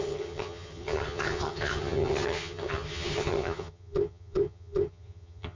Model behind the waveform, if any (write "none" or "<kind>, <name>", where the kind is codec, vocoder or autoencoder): vocoder, HiFi-GAN